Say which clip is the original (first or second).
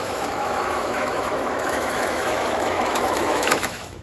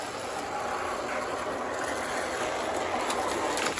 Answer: second